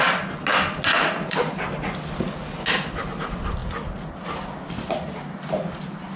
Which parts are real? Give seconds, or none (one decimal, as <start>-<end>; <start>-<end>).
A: 0.0-6.2